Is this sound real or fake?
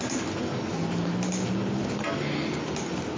real